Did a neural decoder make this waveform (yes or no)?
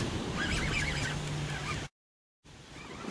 no